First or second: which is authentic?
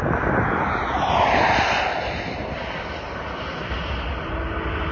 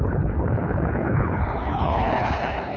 first